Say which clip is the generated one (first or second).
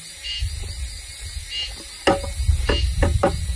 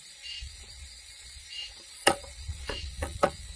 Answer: second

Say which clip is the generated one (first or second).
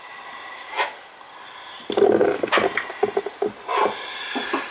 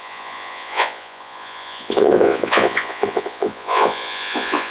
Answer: second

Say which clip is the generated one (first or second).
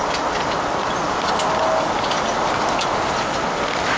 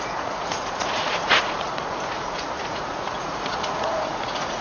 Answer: second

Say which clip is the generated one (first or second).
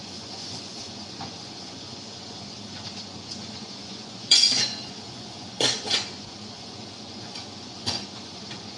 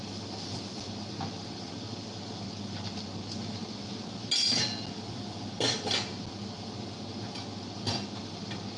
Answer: first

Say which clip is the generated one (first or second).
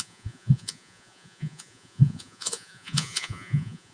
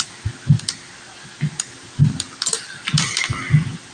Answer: first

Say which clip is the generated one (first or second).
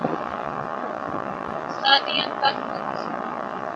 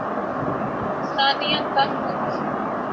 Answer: first